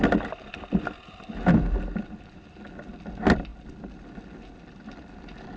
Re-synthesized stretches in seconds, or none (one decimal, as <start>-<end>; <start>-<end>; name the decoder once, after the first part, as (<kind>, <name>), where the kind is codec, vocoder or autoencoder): none